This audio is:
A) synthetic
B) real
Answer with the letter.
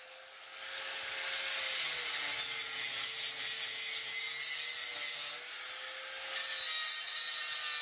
B